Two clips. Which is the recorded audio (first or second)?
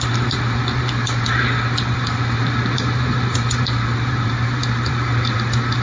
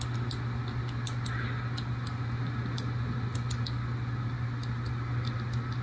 second